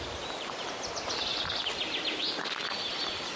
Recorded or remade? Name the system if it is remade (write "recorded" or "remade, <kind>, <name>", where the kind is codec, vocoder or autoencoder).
recorded